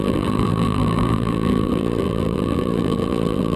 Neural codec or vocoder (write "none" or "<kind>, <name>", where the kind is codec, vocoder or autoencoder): vocoder, BigVGAN v2